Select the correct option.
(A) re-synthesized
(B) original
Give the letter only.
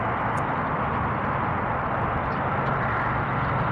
B